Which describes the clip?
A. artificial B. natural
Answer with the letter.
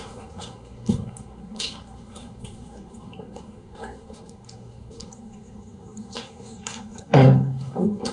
A